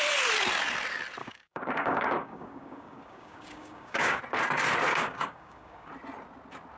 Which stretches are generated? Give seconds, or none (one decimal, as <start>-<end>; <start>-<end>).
1.2-4.2; 4.9-5.9